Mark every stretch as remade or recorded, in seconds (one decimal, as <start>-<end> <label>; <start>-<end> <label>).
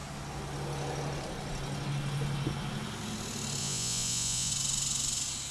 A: 0.0-3.6 recorded; 3.6-4.5 remade; 4.5-5.5 recorded